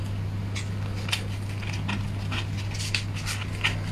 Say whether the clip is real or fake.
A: real